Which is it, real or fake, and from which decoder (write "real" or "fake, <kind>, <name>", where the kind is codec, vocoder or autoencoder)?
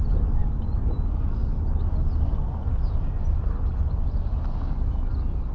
real